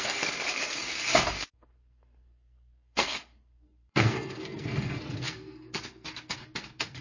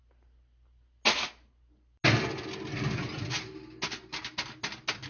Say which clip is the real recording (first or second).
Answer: second